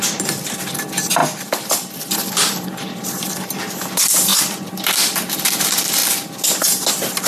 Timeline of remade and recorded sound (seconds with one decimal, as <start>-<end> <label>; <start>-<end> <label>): 0.0-6.0 remade; 6.0-7.3 recorded